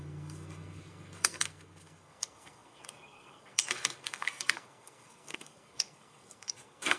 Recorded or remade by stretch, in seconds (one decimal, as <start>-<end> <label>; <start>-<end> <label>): 0.0-7.0 remade